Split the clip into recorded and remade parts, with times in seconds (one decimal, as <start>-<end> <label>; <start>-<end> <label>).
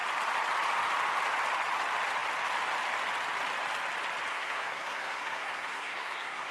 0.0-4.3 recorded; 4.3-6.5 remade